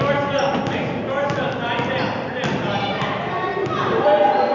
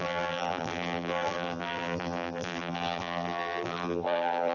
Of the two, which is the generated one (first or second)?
second